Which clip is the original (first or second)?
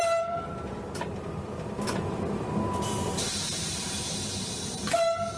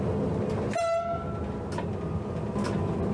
second